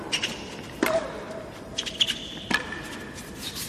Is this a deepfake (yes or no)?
no